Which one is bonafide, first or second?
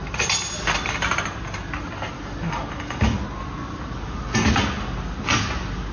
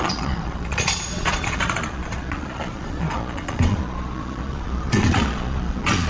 first